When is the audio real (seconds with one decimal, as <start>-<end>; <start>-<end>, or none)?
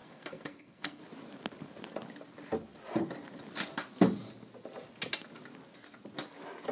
1.0-6.7